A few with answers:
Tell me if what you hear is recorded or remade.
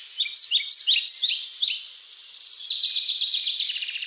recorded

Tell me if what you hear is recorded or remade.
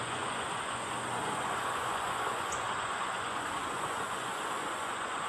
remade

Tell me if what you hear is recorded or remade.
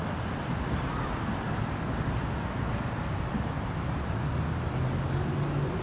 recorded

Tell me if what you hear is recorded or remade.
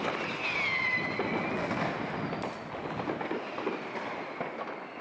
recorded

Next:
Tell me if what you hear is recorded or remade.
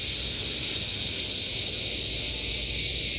recorded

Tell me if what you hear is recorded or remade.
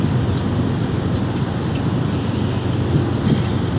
recorded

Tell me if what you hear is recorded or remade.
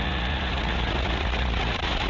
remade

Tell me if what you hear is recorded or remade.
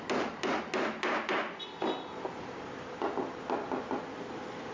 recorded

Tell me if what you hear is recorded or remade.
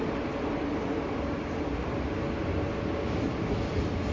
recorded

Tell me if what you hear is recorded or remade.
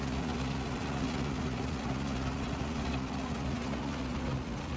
remade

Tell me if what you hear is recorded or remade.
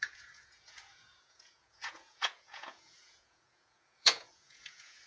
remade